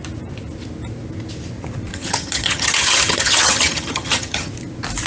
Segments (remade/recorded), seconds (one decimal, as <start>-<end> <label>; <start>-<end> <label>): 0.0-1.9 recorded; 1.9-4.5 remade; 4.5-5.1 recorded